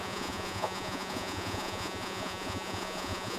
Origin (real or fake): fake